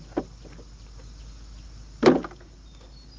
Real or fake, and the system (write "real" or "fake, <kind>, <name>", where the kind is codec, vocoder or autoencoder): real